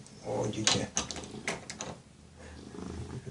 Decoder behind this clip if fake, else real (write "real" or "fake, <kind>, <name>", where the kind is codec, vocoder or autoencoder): real